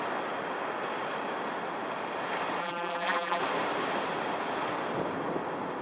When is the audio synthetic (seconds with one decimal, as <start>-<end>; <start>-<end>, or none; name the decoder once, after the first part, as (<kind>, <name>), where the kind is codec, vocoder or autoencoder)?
2.6-3.4 (vocoder, BigVGAN v2)